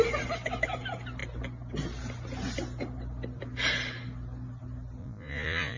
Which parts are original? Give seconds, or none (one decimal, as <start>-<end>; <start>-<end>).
0.0-5.0